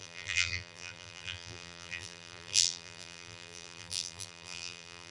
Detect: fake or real fake